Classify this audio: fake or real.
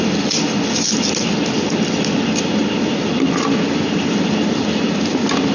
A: real